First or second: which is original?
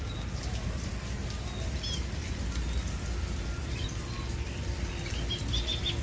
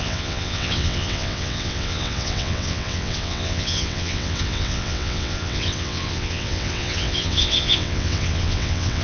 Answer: first